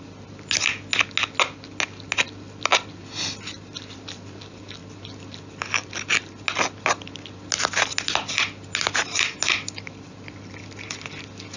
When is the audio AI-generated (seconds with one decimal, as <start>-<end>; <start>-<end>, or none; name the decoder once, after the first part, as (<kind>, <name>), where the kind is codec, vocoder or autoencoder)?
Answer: none